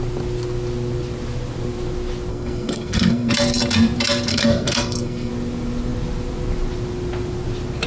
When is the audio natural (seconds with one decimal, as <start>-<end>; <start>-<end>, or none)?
0.0-2.3; 3.3-4.3; 5.3-7.9